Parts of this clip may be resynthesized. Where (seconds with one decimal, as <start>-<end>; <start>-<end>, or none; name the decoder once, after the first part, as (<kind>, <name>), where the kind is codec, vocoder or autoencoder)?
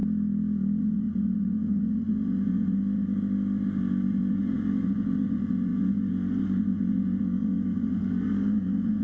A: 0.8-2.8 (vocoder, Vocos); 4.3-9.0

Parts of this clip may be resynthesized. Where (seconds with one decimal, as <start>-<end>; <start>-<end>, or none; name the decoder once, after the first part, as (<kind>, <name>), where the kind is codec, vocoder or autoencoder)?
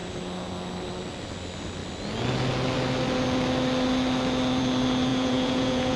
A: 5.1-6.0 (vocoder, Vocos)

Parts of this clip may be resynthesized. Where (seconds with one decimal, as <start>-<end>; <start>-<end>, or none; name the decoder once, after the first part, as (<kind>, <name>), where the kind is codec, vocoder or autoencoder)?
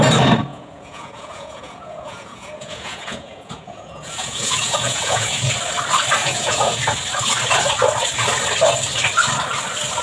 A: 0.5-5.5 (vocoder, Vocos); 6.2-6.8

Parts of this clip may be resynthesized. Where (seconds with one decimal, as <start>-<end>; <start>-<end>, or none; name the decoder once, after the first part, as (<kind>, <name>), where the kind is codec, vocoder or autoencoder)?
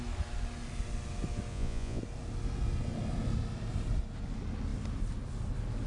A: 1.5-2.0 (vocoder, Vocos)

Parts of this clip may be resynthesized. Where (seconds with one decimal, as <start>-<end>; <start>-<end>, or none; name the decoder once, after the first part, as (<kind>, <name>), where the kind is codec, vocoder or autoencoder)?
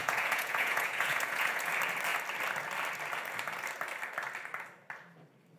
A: 0.0-1.7 (vocoder, Vocos)